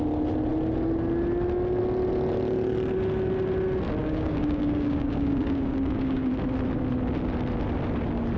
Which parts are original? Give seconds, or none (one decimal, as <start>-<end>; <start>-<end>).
0.0-4.0; 6.3-8.4